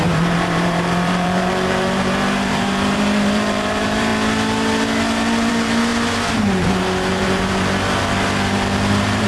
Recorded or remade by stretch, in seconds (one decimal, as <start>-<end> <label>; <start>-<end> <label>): 0.0-4.1 remade; 4.1-5.5 recorded; 5.5-5.9 remade; 5.9-7.1 recorded; 7.1-9.3 remade

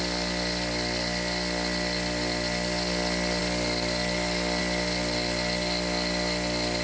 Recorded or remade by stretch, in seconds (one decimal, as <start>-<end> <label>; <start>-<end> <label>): 0.0-6.8 recorded

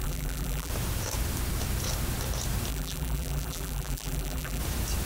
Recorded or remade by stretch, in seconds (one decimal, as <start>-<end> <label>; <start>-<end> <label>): 0.0-0.7 remade; 0.7-2.7 recorded; 2.7-4.6 remade; 4.6-5.1 recorded

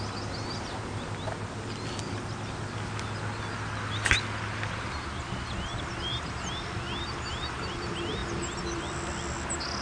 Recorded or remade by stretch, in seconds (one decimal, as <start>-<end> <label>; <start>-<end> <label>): 0.0-8.2 recorded; 8.2-8.8 remade; 8.8-9.8 recorded

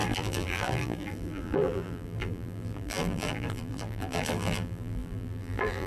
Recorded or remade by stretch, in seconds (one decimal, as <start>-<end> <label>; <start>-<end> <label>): 0.0-5.9 remade

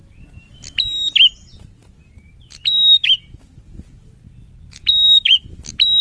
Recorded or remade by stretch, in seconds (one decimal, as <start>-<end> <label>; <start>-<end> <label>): 0.0-4.6 recorded; 4.6-5.4 remade; 5.4-6.0 recorded

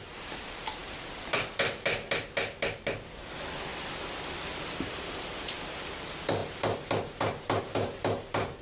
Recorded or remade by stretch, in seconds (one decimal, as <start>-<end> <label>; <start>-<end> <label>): 0.0-3.7 recorded; 3.7-5.4 remade; 5.4-8.6 recorded